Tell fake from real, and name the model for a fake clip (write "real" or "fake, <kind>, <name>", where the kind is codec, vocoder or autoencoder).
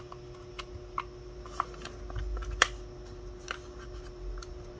real